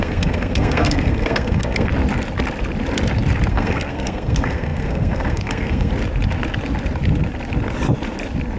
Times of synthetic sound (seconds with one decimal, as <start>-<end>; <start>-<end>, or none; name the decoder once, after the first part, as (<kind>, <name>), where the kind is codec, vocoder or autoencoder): 0.0-1.9 (codec, SNAC); 3.5-5.9